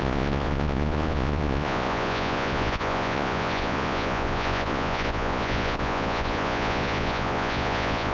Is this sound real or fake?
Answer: fake